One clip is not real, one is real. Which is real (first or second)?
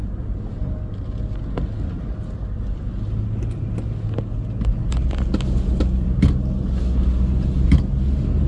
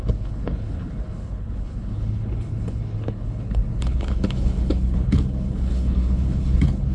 first